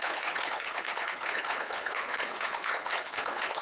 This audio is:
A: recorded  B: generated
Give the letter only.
B